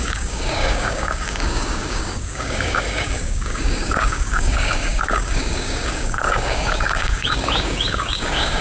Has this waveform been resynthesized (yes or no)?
yes